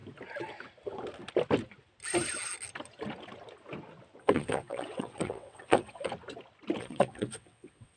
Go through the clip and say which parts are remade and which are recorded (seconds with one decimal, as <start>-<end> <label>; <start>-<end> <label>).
0.0-4.2 recorded; 4.2-6.1 remade; 6.1-6.8 recorded; 6.8-8.0 remade